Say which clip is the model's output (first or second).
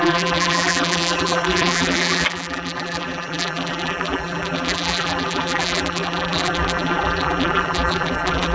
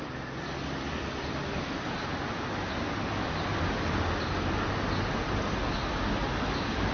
first